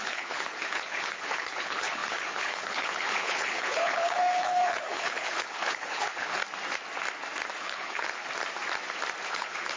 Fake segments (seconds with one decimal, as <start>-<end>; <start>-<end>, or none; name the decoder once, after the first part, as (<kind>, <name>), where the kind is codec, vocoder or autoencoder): 0.0-6.4 (codec, HILCodec); 7.6-8.1; 9.3-9.8